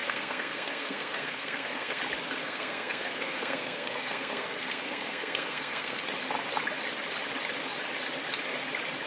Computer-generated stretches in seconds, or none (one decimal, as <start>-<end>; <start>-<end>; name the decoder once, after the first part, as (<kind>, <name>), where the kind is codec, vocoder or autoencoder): 0.0-2.0 (codec, SNAC); 2.4-6.0